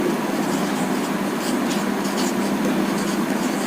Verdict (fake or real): real